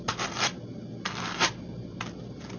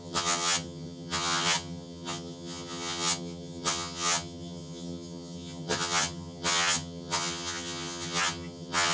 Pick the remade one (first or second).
second